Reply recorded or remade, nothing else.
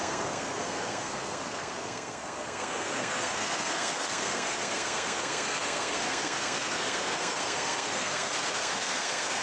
remade